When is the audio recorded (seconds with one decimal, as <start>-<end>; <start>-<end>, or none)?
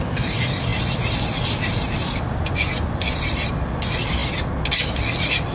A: 0.0-5.5